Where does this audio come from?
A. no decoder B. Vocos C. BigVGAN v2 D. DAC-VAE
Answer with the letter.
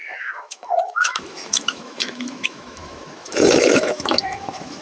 D